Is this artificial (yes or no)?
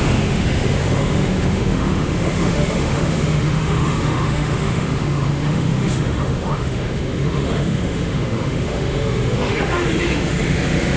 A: yes